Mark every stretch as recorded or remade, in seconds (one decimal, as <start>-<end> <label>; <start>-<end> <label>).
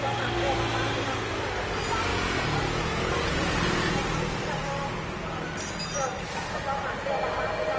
0.0-2.1 recorded; 2.1-4.0 remade; 4.0-7.8 recorded